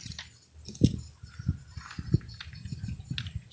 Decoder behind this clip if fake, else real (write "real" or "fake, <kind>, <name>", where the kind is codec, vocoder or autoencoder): real